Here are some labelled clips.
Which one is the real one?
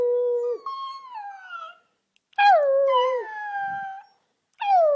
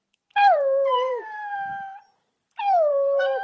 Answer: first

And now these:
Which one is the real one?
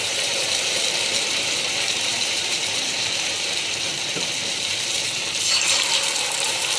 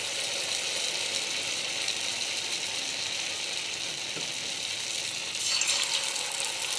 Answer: second